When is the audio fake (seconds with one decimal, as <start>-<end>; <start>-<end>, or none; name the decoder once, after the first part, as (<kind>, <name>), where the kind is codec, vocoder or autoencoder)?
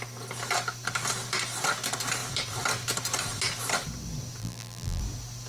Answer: 4.4-5.0 (vocoder, BigVGAN v2)